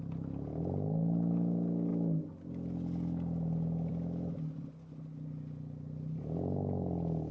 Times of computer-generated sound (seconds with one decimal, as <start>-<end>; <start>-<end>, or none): none